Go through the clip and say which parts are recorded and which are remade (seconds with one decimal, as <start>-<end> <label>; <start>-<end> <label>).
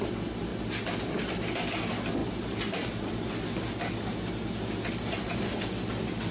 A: 0.0-6.3 recorded